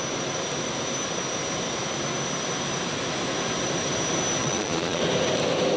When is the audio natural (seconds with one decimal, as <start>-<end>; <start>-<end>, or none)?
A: 0.0-4.4; 5.0-5.8